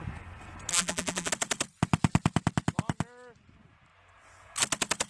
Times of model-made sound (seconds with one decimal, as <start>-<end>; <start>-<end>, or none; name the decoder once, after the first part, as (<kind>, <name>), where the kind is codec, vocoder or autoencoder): 0.7-1.3 (vocoder, BigVGAN v2)